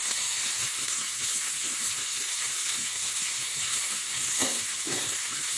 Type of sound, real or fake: fake